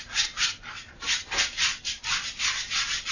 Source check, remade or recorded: recorded